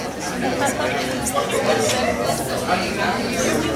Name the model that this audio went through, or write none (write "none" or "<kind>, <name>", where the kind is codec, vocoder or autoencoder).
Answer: none